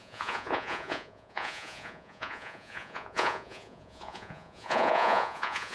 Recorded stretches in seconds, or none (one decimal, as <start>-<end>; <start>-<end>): none